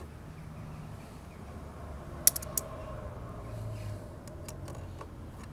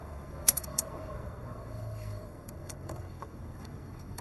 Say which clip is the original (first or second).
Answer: first